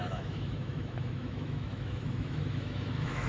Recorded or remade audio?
remade